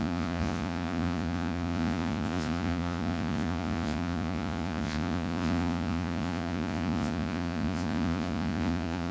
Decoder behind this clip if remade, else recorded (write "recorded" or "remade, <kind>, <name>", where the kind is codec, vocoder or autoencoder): remade, vocoder, Vocos